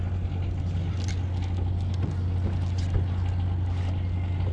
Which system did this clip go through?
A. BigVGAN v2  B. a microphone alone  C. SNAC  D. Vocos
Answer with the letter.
B